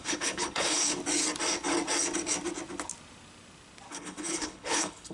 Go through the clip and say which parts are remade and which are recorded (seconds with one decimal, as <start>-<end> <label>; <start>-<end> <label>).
0.0-1.0 remade; 1.0-3.9 recorded; 3.9-5.1 remade